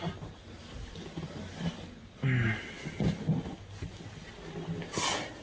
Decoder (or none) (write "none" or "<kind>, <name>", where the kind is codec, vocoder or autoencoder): none